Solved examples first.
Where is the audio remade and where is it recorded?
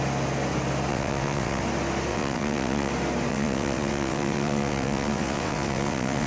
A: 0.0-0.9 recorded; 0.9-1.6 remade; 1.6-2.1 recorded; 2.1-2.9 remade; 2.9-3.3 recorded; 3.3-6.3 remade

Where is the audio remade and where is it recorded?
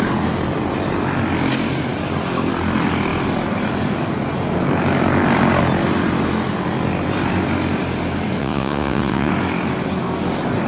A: 0.0-8.4 recorded; 8.4-9.3 remade; 9.3-10.7 recorded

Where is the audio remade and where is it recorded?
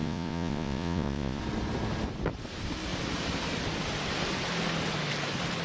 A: 0.0-1.4 remade; 1.4-5.6 recorded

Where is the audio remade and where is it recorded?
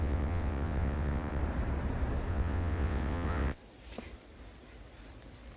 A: 0.0-1.4 remade; 1.4-2.3 recorded; 2.3-3.6 remade; 3.6-5.6 recorded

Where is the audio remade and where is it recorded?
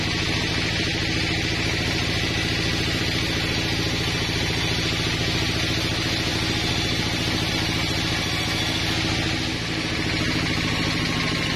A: 0.0-11.6 recorded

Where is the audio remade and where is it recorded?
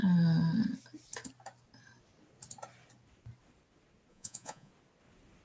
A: 0.0-4.1 recorded; 4.1-4.7 remade; 4.7-5.4 recorded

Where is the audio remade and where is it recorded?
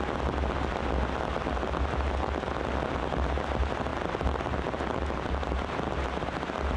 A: 0.0-6.8 recorded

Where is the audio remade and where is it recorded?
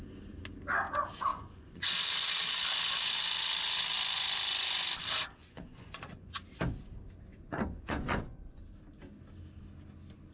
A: 0.0-1.3 recorded; 1.3-2.0 remade; 2.0-5.4 recorded; 5.4-6.3 remade; 6.3-7.3 recorded; 7.3-8.6 remade; 8.6-10.3 recorded